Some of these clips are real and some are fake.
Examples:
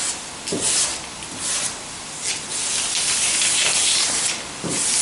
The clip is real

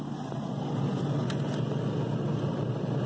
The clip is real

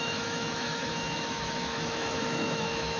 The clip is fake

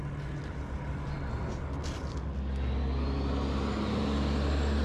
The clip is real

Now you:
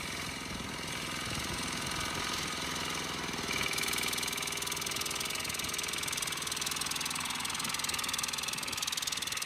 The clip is real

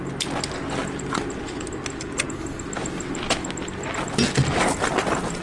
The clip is real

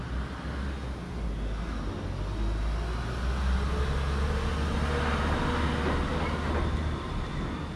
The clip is real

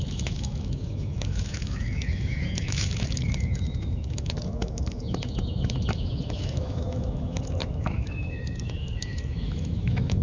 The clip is fake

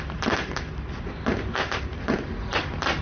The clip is real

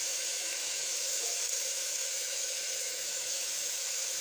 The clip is fake